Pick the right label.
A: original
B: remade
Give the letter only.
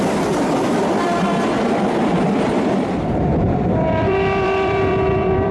B